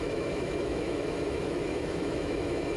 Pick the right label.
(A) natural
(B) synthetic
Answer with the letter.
B